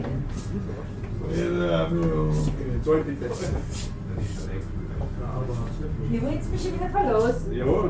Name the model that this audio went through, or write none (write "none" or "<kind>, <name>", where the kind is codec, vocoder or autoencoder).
none